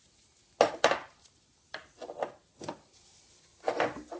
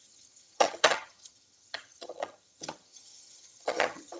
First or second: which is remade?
second